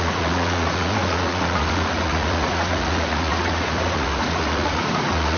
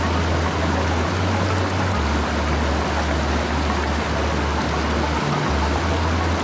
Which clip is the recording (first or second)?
second